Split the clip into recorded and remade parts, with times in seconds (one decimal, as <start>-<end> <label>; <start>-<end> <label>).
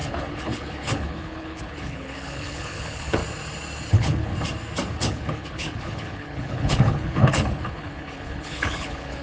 0.0-3.2 remade; 3.2-3.9 recorded; 3.9-4.3 remade; 4.3-5.0 recorded; 5.0-9.2 remade